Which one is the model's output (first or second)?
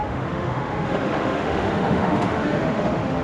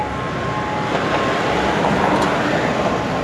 first